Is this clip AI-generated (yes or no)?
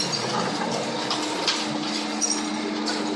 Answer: no